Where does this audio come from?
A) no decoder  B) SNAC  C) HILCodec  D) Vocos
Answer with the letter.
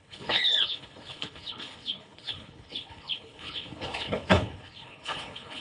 C